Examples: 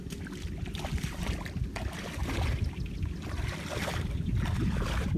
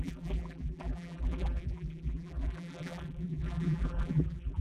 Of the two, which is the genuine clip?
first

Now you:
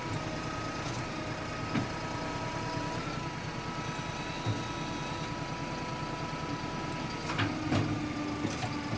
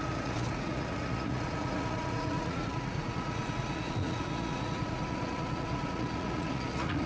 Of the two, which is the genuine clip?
first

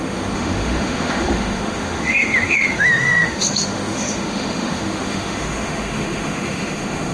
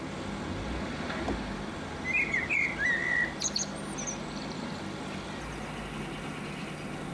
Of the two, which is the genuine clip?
second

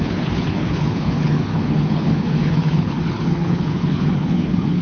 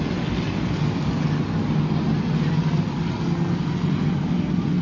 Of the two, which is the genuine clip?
second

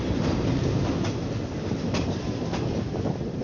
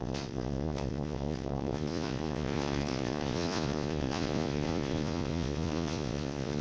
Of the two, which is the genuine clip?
first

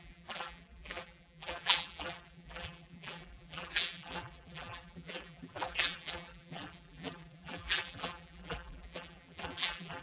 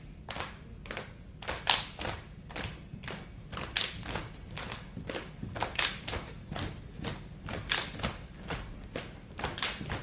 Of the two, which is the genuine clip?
second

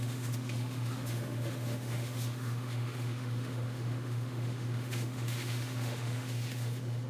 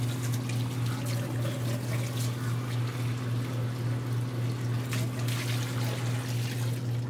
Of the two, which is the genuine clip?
second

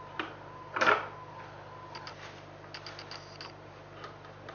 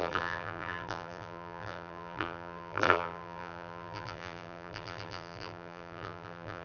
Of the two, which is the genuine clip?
first